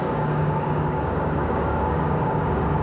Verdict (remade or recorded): remade